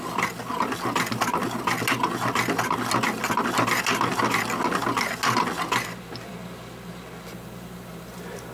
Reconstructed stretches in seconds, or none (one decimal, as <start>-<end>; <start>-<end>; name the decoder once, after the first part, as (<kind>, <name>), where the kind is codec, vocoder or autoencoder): none